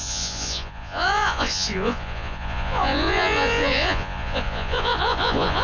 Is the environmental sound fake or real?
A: fake